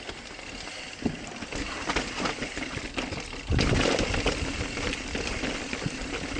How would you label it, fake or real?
real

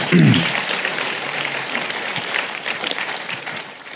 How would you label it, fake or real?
fake